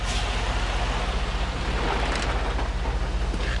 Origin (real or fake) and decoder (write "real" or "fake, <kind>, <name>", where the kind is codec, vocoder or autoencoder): real